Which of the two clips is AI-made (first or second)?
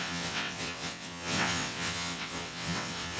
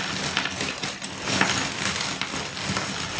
first